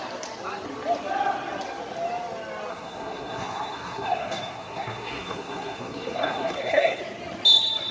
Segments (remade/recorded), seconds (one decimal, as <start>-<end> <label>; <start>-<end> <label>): 0.0-2.7 recorded; 2.7-7.0 remade; 7.0-7.9 recorded